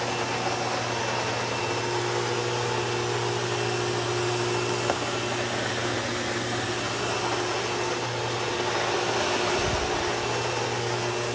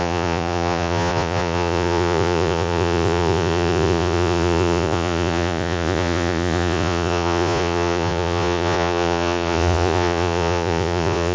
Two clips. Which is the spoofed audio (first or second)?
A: second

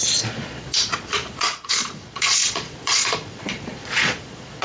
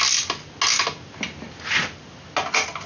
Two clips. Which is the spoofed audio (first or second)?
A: first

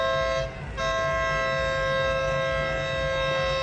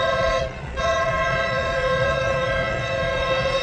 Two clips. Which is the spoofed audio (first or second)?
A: second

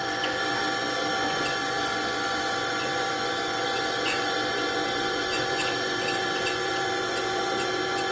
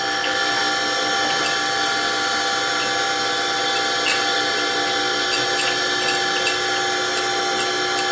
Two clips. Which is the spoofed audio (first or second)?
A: first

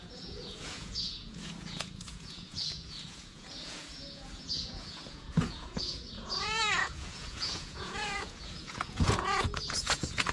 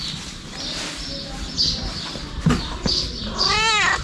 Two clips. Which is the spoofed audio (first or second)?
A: first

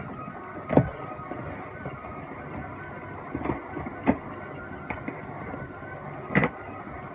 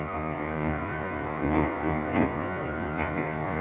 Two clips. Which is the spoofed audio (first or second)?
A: second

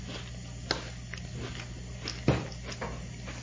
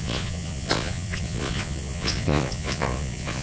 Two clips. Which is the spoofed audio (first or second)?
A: second